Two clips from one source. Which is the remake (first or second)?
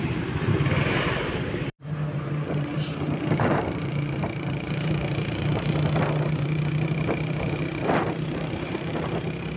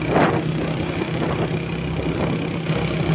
first